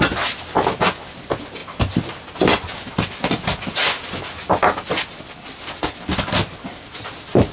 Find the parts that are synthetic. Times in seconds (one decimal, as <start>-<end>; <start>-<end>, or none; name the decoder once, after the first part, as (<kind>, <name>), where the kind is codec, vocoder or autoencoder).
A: none

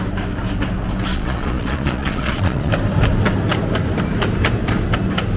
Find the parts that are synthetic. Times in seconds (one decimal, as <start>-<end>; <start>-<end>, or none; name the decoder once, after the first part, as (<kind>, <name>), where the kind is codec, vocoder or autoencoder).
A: 1.1-2.7 (vocoder, Vocos)

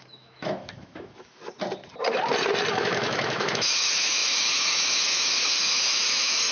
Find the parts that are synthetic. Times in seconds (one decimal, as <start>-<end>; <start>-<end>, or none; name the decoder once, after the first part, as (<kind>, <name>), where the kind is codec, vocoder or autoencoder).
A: 0.0-1.4 (autoencoder, DAC-VAE); 2.7-6.5

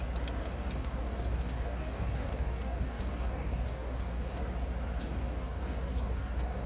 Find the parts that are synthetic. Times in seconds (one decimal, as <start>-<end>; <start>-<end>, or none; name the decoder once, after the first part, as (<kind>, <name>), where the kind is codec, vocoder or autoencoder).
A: 0.4-4.4 (codec, DAC); 5.0-6.7